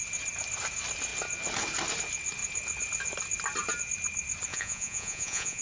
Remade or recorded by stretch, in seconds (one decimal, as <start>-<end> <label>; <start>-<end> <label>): 0.0-4.5 recorded; 4.5-5.6 remade

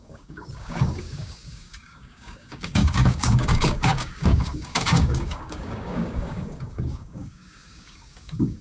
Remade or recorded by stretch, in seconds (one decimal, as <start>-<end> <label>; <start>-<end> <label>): 0.0-8.6 remade

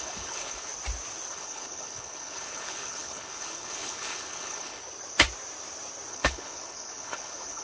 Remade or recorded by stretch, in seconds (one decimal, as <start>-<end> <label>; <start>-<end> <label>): 0.0-0.7 remade; 0.7-1.3 recorded; 1.3-4.8 remade; 4.8-6.1 recorded; 6.1-7.6 remade

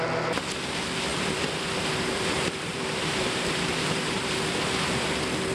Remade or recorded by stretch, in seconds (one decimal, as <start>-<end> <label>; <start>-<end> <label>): 0.0-1.1 recorded; 1.1-4.4 remade; 4.4-5.5 recorded

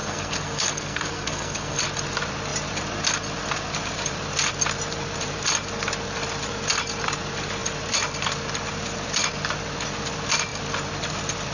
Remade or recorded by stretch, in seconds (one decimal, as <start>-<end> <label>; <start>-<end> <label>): 0.0-1.8 remade; 1.8-11.5 recorded

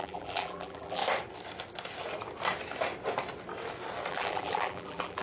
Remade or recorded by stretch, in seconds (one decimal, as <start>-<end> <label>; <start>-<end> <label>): 0.0-1.0 remade; 1.0-4.1 recorded; 4.1-5.2 remade

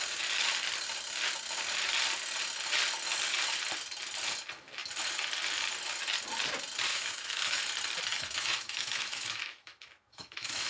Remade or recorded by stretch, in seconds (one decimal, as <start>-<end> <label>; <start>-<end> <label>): 0.0-6.9 recorded; 6.9-7.6 remade; 7.6-8.1 recorded; 8.1-10.7 remade